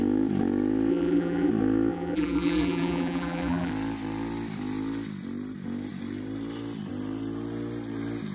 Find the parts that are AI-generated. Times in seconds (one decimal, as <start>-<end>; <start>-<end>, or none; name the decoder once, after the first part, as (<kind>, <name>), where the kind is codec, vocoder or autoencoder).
0.9-1.5 (vocoder, BigVGAN v2); 1.9-3.7